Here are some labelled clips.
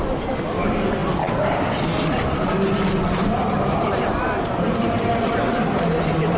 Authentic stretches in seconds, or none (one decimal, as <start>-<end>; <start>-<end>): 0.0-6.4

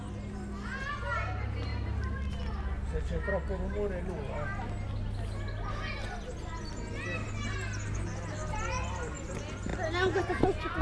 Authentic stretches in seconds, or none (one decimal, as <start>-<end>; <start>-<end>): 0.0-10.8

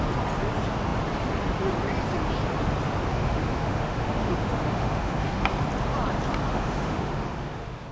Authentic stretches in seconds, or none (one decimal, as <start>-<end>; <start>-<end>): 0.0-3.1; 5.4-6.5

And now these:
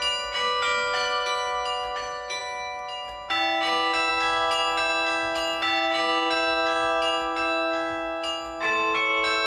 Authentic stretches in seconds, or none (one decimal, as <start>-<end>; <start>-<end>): 0.0-9.5

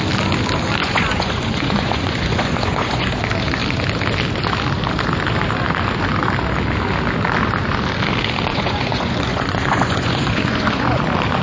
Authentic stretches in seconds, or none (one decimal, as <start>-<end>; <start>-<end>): 0.0-0.8; 3.1-8.5; 11.0-11.4

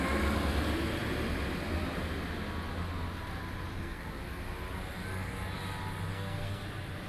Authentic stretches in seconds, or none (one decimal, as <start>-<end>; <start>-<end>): 0.0-3.7; 4.2-6.1; 6.6-7.1